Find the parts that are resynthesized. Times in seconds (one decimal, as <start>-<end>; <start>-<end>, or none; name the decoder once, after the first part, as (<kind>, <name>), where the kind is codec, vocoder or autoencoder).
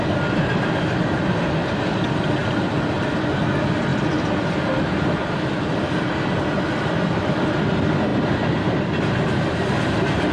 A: none